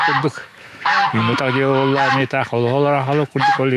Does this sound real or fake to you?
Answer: fake